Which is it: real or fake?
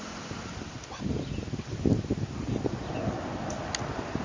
real